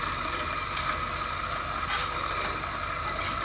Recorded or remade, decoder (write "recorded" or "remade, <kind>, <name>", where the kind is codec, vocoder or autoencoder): recorded